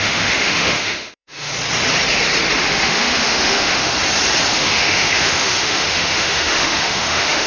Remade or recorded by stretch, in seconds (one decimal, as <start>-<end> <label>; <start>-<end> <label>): 0.0-1.5 remade; 1.5-2.6 recorded; 2.6-3.9 remade; 3.9-4.5 recorded; 4.5-7.5 remade

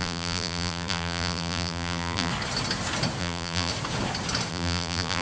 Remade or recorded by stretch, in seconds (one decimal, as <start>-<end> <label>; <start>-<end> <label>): 0.0-2.3 remade; 2.3-3.2 recorded; 3.2-3.7 remade; 3.7-4.5 recorded; 4.5-5.2 remade